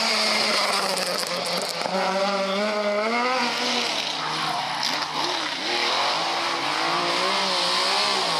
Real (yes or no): yes